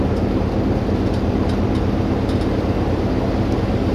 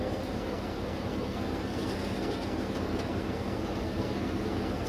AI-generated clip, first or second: second